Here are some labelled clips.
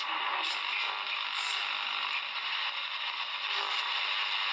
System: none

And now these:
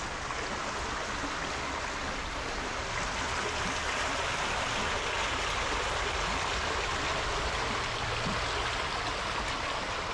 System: none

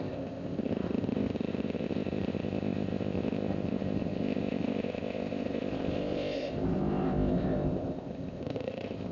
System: codec, ZipCodec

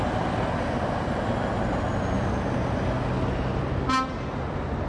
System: none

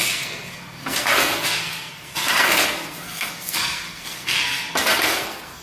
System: codec, SNAC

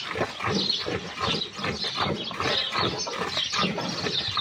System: none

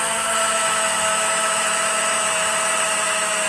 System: autoencoder, DAC-VAE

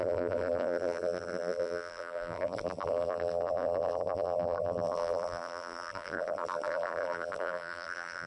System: vocoder, BigVGAN v2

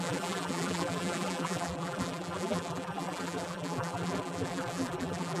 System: vocoder, BigVGAN v2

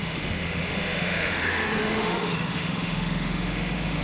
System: autoencoder, DAC-VAE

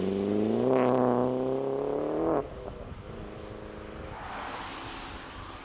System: none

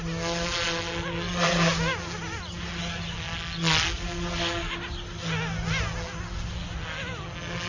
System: none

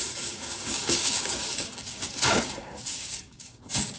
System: codec, DAC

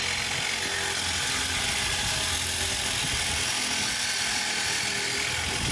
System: none